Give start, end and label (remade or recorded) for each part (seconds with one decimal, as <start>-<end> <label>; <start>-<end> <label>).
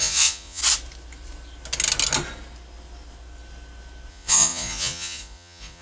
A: 0.0-0.6 remade; 0.6-4.1 recorded; 4.1-5.8 remade